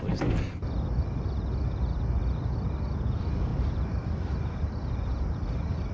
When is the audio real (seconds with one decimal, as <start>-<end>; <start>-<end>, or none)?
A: 0.0-3.5